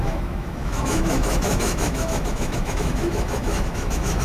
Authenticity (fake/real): fake